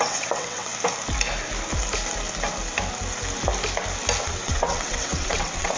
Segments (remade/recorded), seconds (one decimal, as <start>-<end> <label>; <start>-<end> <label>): 0.0-0.7 remade; 0.7-4.2 recorded; 4.2-5.8 remade